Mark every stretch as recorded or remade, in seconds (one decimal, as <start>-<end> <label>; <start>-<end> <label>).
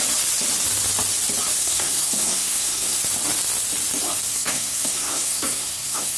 0.0-1.6 recorded; 1.6-3.0 remade; 3.0-4.3 recorded; 4.3-6.2 remade